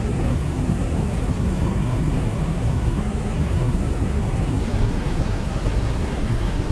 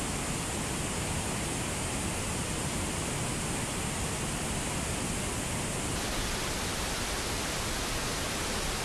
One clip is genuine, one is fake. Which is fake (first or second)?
first